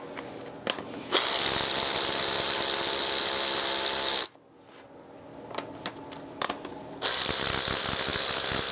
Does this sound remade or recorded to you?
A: recorded